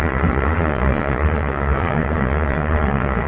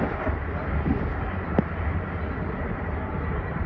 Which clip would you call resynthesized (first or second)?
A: first